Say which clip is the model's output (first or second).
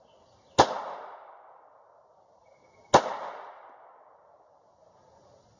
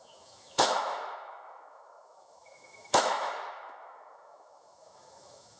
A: second